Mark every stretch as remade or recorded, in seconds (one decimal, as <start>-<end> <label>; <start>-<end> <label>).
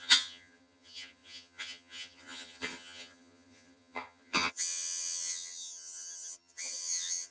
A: 0.0-7.3 remade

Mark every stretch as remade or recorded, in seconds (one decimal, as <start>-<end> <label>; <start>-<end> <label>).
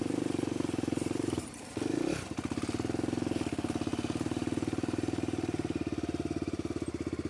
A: 0.0-2.1 remade; 2.1-3.9 recorded; 3.9-6.7 remade; 6.7-7.3 recorded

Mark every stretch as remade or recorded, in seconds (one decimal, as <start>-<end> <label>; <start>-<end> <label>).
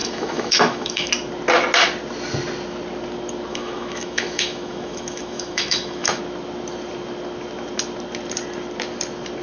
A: 0.0-1.1 remade; 1.1-3.5 recorded; 3.5-6.2 remade; 6.2-9.4 recorded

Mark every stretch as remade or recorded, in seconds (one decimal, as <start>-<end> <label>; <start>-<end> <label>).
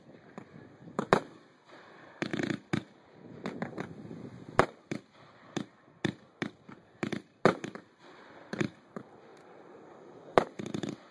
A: 0.0-2.3 remade; 2.3-6.7 recorded; 6.7-11.1 remade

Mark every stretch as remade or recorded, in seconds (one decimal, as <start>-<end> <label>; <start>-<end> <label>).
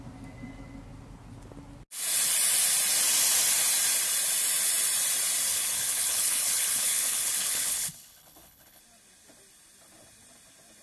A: 0.0-5.5 recorded; 5.5-8.8 remade; 8.8-10.8 recorded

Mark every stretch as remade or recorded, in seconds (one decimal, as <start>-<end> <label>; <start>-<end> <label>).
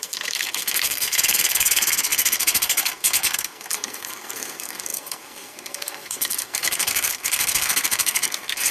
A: 0.0-8.7 remade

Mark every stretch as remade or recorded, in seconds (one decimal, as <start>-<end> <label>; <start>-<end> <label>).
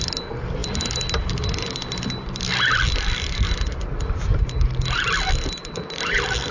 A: 0.0-6.5 recorded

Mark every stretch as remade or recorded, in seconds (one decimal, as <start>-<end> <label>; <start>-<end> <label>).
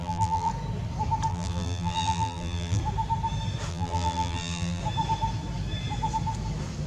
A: 0.0-0.5 remade; 0.5-1.3 recorded; 1.3-2.8 remade; 2.8-3.7 recorded; 3.7-4.8 remade; 4.8-6.9 recorded